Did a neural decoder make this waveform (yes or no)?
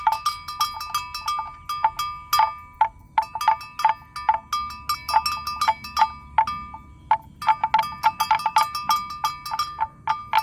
no